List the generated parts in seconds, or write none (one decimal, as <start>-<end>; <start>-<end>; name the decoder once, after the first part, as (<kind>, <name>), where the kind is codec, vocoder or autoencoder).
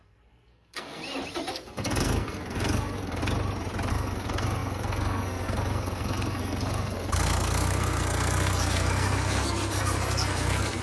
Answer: 0.0-1.0 (codec, SNAC); 1.5-3.2; 3.9-10.8